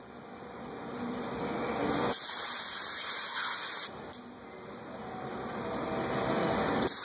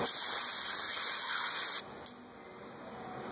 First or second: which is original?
second